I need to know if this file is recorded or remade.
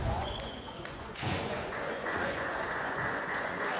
remade